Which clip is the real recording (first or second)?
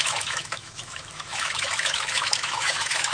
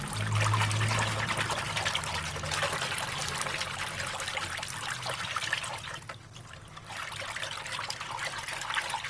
second